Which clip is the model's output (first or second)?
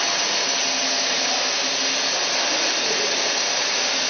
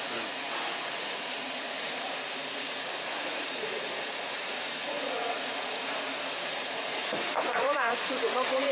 second